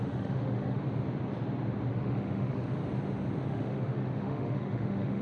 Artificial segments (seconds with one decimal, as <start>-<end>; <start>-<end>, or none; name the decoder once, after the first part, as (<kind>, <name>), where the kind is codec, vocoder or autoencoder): 0.0-0.8 (autoencoder, DAC-VAE); 1.9-2.8; 3.5-5.2